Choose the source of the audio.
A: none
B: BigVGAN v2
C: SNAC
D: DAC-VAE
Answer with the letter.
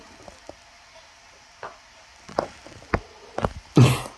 A